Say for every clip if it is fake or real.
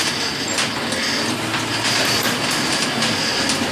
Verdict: real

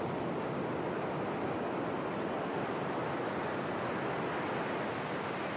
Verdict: real